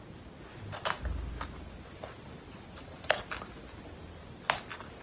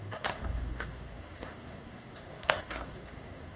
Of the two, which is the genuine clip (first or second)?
first